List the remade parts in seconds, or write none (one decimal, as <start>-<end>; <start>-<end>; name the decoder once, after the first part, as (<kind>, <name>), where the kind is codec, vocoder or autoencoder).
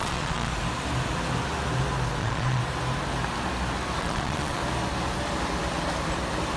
0.0-0.5 (vocoder, Vocos); 2.2-2.6; 4.0-4.6